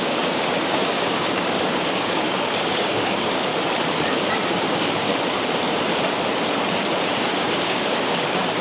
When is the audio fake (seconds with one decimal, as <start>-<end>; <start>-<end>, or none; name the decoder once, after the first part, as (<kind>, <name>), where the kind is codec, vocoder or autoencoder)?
0.0-3.5 (codec, DAC); 4.5-5.1; 7.0-8.6